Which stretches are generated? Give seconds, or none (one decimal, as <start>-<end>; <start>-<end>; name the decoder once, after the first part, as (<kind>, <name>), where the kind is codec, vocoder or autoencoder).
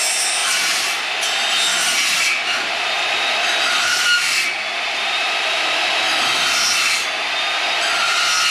0.4-1.1 (vocoder, BigVGAN v2); 1.7-6.0